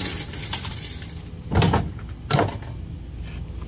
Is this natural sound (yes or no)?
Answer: yes